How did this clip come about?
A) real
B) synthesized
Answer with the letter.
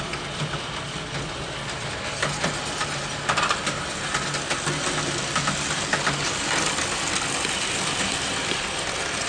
A